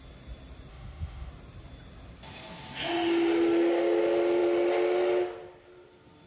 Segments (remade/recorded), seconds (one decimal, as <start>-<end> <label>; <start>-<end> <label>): 0.0-0.7 recorded; 0.7-1.3 remade; 1.3-6.3 recorded